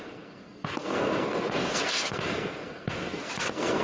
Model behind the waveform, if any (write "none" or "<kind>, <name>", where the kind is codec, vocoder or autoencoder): codec, SNAC